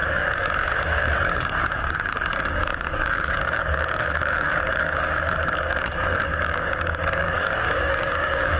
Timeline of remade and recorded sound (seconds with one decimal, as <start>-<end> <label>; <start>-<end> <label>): 0.0-8.6 remade